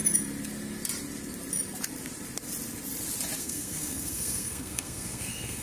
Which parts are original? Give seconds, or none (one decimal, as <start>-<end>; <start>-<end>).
0.0-3.4